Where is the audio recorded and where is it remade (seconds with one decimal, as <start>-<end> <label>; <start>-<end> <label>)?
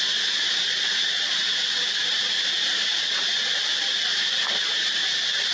0.0-5.5 recorded